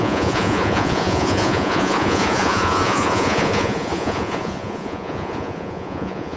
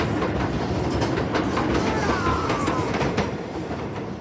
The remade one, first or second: first